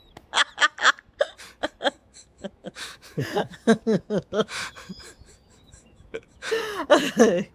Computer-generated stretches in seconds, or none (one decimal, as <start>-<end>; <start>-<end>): 2.0-6.5